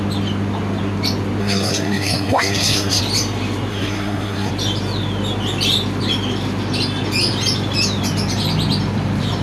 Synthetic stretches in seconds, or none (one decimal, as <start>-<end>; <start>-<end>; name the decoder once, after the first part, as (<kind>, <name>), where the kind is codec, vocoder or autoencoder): 1.4-3.0 (codec, SNAC); 3.7-4.5